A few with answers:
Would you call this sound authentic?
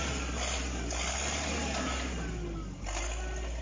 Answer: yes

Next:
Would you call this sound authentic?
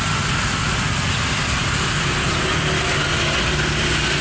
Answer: yes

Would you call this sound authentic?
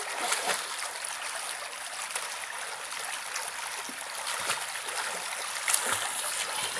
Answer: yes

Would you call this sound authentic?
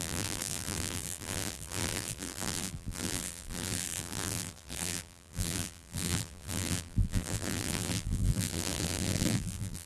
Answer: no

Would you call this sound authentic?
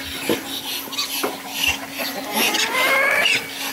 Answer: yes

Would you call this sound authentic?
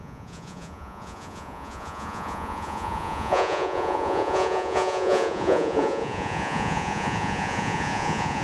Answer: no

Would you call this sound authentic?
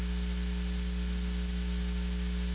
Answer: yes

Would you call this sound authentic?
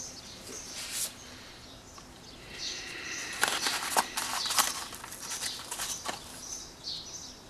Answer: yes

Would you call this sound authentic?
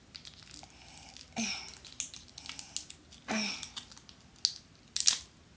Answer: yes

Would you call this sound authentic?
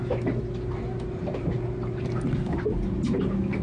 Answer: yes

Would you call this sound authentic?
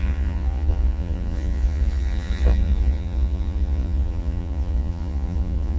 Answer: no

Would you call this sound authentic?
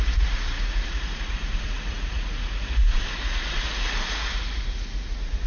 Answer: no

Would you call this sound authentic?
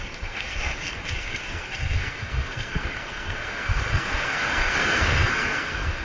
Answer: no